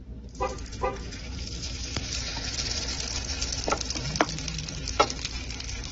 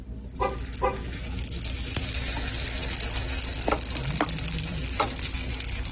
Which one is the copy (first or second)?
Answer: first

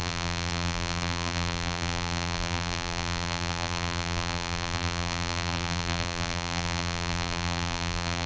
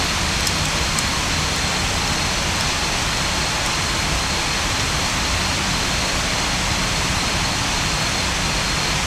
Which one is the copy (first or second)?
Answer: first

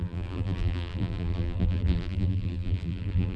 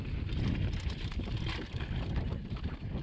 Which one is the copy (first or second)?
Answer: first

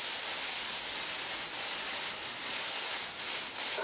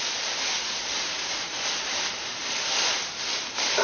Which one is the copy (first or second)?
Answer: second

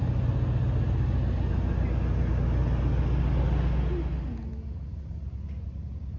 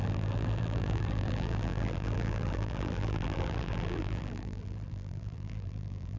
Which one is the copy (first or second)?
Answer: second